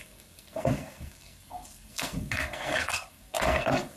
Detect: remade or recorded remade